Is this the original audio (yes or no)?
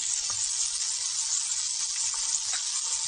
yes